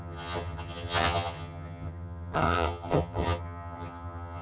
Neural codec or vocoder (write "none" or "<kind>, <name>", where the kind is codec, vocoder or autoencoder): vocoder, HiFi-GAN